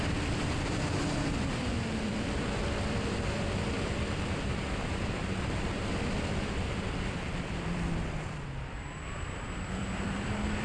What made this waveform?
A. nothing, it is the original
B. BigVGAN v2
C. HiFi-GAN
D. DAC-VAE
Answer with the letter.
B